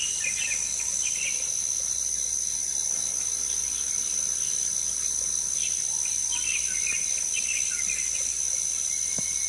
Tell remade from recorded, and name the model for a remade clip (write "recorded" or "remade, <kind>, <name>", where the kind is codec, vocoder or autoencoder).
recorded